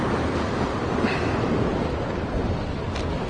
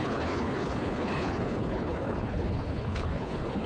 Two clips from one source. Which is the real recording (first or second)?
first